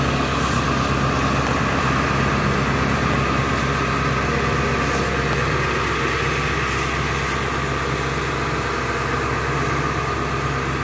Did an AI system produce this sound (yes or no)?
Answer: no